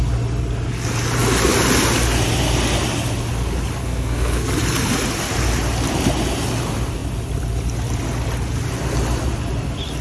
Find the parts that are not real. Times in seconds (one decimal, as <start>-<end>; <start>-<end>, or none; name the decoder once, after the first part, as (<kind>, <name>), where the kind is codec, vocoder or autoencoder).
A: 3.8-4.5 (codec, SNAC)